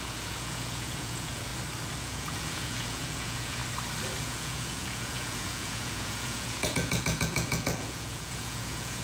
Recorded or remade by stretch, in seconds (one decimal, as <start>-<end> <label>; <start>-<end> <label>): 0.0-1.5 remade; 1.5-2.0 recorded; 2.0-3.6 remade; 3.6-4.2 recorded; 4.2-9.0 remade